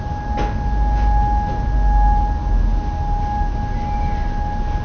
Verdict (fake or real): real